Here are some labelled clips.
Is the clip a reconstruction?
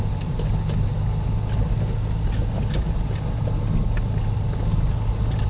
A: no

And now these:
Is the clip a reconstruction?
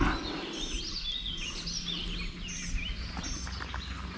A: no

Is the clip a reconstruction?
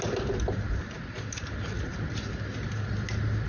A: no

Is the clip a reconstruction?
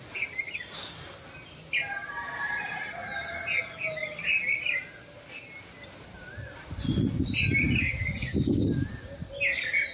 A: no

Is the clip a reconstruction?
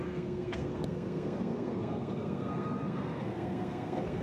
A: yes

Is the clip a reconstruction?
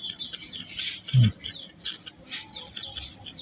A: no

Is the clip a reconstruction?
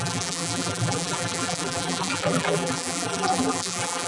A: yes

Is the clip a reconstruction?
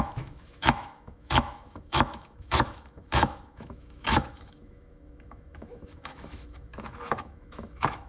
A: yes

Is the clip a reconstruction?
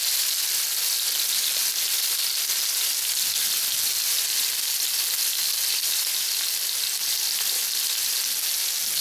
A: no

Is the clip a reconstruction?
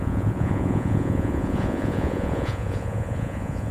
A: yes